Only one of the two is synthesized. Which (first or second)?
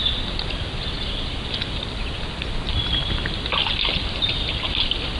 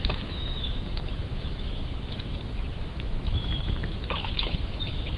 second